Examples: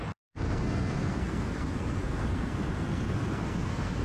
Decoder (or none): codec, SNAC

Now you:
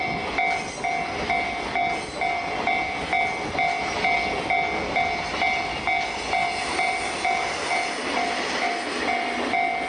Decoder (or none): none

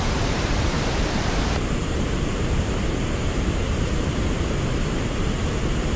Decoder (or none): vocoder, BigVGAN v2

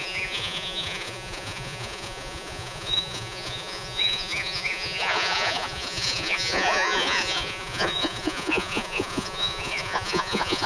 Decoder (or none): vocoder, Vocos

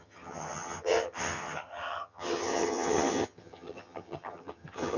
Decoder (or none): vocoder, HiFi-GAN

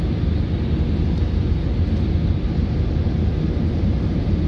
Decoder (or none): none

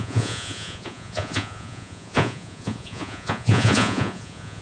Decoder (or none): vocoder, Vocos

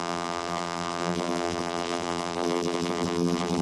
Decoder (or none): vocoder, BigVGAN v2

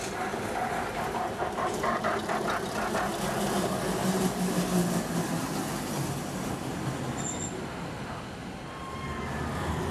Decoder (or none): none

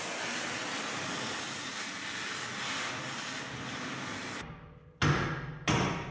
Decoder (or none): none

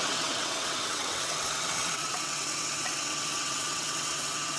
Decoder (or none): vocoder, WaveNeXt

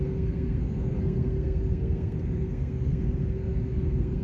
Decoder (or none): codec, SNAC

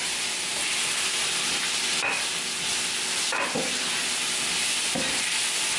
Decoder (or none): none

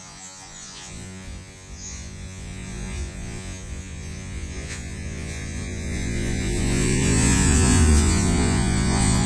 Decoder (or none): vocoder, Vocos